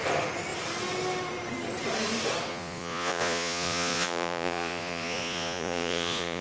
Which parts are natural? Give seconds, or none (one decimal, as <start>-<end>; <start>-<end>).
0.0-2.5